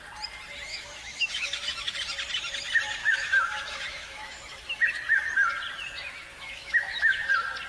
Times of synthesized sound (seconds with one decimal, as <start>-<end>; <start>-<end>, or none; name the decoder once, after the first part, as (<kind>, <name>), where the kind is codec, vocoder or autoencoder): 0.7-1.9 (autoencoder, DAC-VAE); 3.0-4.8; 6.3-7.3